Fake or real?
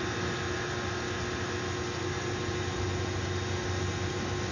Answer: real